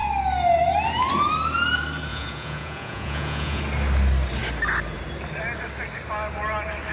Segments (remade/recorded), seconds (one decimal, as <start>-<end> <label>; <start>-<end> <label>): 0.0-2.1 recorded; 2.1-3.6 remade; 3.6-6.9 recorded